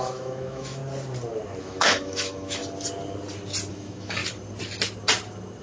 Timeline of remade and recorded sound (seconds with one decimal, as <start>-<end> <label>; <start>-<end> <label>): 0.0-0.8 remade; 0.8-1.6 recorded; 1.6-2.6 remade; 2.6-3.7 recorded; 3.7-4.2 remade; 4.2-5.6 recorded